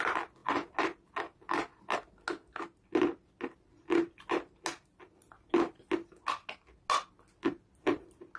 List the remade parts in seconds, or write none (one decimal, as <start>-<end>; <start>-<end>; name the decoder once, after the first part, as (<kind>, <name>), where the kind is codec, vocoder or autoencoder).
none